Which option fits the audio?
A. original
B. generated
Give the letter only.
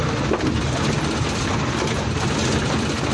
A